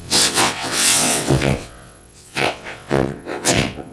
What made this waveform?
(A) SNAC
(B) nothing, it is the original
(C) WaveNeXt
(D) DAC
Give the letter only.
C